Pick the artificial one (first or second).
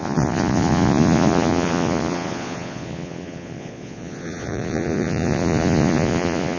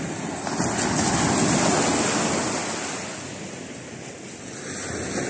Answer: first